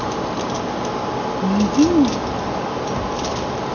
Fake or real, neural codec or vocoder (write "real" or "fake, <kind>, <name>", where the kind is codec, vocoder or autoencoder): real